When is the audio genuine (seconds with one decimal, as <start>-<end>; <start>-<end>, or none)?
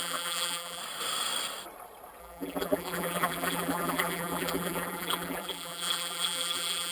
0.8-2.2